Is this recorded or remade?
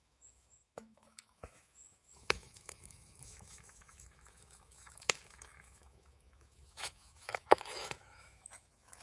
remade